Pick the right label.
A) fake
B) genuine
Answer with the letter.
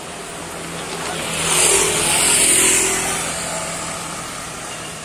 B